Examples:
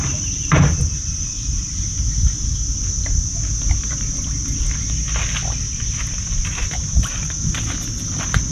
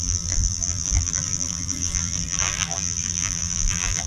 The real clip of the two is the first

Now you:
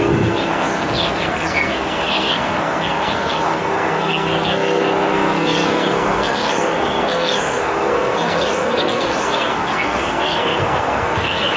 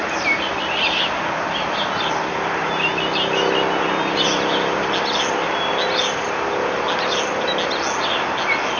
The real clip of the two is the second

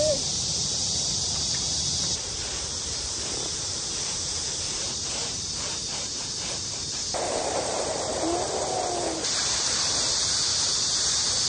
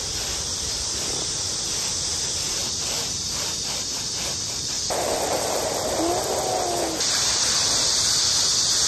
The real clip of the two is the second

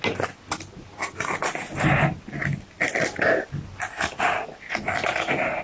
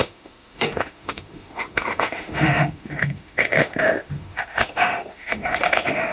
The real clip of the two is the first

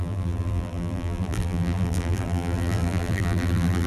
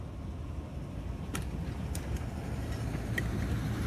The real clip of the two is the second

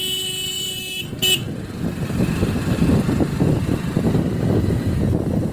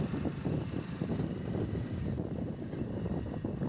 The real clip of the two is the first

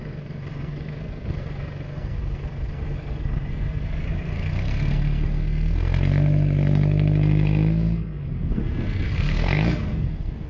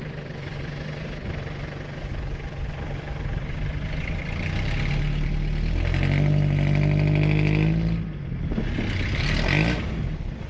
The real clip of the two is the second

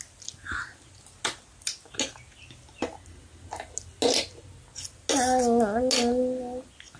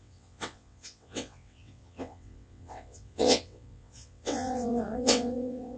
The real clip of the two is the first